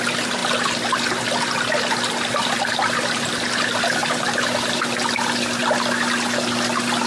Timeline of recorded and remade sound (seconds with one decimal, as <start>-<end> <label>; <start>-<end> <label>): 0.0-4.0 recorded; 4.0-4.8 remade; 4.8-7.1 recorded

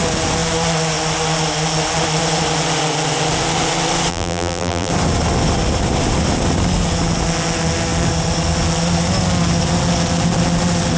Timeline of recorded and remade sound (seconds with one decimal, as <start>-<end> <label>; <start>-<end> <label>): 0.0-4.1 recorded; 4.1-4.9 remade; 4.9-11.0 recorded

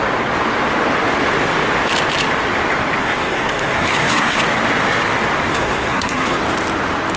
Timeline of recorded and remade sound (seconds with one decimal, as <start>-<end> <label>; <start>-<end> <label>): 0.0-3.0 recorded; 3.0-4.4 remade; 4.4-5.5 recorded; 5.5-6.4 remade; 6.4-7.2 recorded